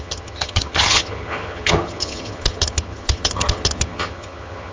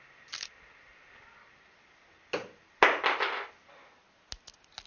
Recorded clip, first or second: second